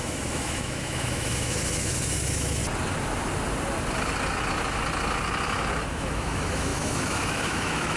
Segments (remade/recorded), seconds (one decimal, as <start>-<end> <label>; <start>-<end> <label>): 0.0-2.6 remade; 2.6-5.9 recorded; 5.9-8.0 remade